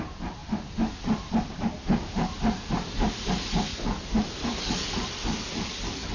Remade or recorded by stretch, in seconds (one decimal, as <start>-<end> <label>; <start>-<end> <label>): 0.0-0.4 recorded; 0.4-3.3 remade; 3.3-3.7 recorded; 3.7-4.6 remade; 4.6-6.1 recorded

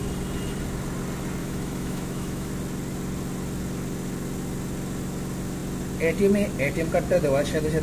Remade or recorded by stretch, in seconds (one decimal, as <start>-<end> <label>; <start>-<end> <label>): 0.0-1.4 recorded; 1.4-2.5 remade; 2.5-7.8 recorded